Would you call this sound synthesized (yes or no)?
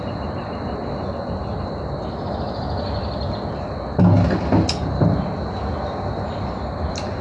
no